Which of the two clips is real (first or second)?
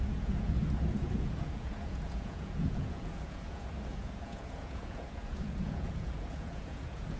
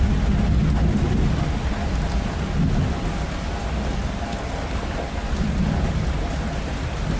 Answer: second